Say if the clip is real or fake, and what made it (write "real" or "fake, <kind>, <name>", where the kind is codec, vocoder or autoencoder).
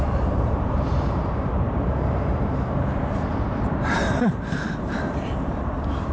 fake, vocoder, BigVGAN v2